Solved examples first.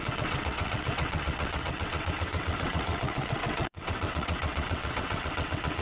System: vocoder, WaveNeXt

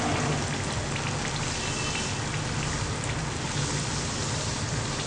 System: none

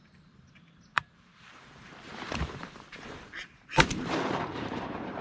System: vocoder, BigVGAN v2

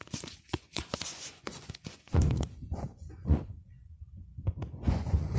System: vocoder, Vocos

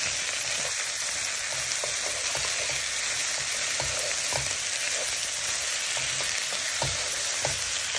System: none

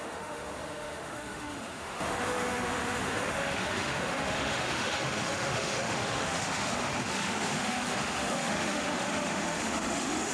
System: autoencoder, DAC-VAE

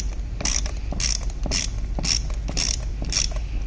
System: none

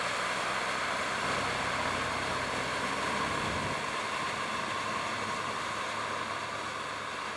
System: none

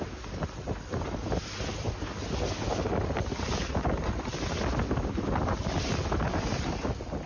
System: none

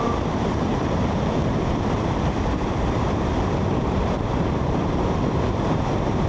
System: vocoder, BigVGAN v2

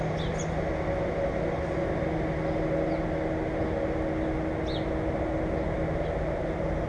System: none